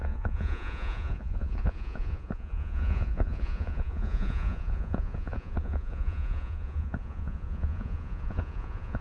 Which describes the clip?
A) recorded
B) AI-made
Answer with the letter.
B